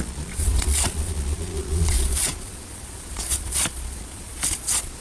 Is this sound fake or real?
fake